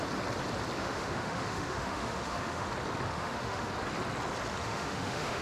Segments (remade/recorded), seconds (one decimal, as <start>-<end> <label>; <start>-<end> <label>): 0.0-0.8 recorded; 0.8-2.7 remade; 2.7-3.1 recorded; 3.1-3.7 remade; 3.7-4.6 recorded; 4.6-5.4 remade